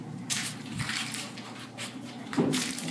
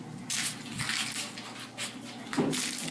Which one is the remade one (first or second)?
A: first